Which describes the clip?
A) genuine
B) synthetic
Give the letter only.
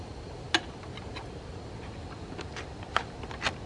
A